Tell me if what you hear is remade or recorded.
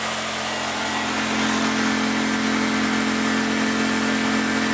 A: recorded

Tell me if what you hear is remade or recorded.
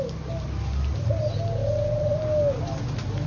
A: recorded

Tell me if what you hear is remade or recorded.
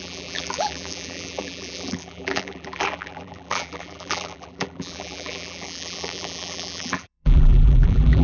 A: remade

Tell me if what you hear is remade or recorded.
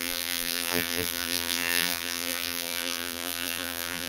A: remade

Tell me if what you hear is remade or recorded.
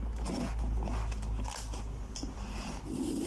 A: recorded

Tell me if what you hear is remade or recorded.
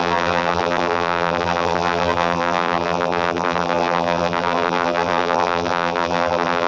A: remade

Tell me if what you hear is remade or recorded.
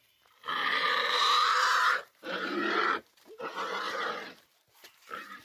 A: remade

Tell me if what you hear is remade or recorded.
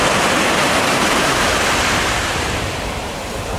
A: remade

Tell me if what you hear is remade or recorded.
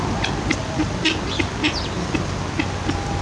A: recorded